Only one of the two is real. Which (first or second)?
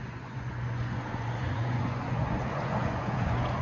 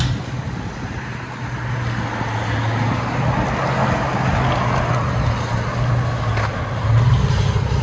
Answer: second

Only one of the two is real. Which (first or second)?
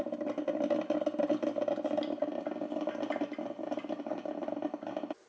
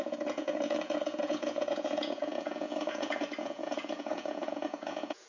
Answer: first